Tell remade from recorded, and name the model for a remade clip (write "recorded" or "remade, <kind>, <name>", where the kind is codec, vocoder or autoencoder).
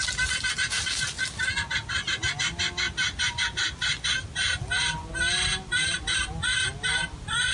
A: recorded